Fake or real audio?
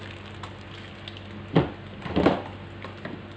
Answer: real